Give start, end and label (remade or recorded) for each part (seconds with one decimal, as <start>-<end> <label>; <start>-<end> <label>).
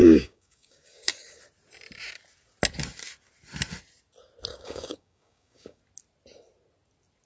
0.0-1.4 remade; 1.4-4.5 recorded; 4.5-5.8 remade; 5.8-7.3 recorded